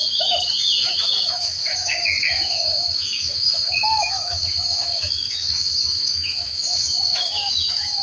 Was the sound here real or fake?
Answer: fake